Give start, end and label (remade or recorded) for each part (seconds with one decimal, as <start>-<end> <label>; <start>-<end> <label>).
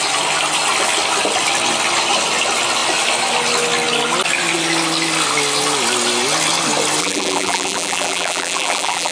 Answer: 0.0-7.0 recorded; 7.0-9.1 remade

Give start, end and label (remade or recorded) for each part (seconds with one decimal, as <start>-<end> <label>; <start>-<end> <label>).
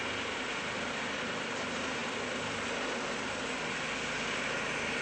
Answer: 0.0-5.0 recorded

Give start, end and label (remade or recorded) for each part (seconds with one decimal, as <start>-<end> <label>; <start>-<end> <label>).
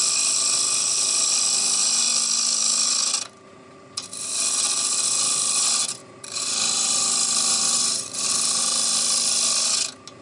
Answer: 0.0-6.0 recorded; 6.0-8.6 remade; 8.6-10.2 recorded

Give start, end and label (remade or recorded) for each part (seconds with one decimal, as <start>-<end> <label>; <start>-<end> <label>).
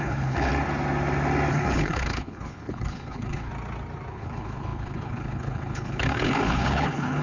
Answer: 0.0-0.5 remade; 0.5-1.5 recorded; 1.5-3.5 remade; 3.5-4.1 recorded; 4.1-7.2 remade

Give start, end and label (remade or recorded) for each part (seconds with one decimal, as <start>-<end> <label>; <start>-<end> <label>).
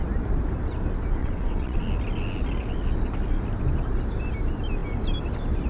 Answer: 0.0-1.2 recorded; 1.2-1.8 remade; 1.8-5.7 recorded